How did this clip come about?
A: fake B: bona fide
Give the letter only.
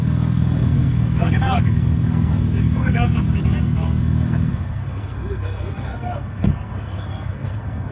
A